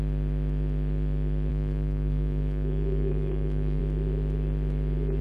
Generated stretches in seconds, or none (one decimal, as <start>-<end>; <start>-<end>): 1.5-3.8